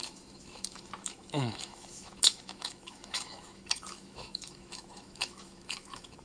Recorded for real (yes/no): no